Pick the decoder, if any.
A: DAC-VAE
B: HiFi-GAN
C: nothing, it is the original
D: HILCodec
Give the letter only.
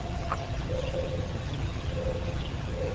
B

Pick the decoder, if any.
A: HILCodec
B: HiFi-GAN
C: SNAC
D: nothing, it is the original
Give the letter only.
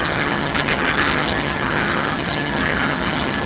B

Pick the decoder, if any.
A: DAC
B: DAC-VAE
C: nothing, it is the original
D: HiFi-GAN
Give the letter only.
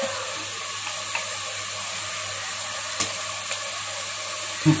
C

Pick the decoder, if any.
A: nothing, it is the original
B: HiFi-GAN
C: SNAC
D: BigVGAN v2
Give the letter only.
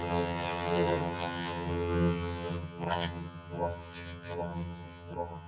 B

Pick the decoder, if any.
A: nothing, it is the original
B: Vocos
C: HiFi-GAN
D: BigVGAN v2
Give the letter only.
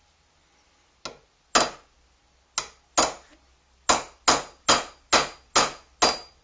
A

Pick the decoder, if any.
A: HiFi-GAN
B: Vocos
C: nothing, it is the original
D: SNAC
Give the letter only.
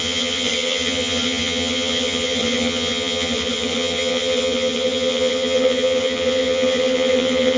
A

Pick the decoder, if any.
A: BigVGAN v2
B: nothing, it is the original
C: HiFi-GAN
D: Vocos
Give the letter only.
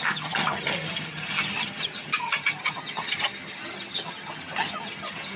C